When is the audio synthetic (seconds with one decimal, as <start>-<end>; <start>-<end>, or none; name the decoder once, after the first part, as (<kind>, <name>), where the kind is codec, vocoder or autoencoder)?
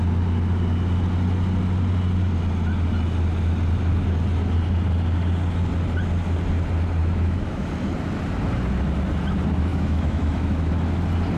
7.0-7.7 (autoencoder, DAC-VAE); 9.7-10.7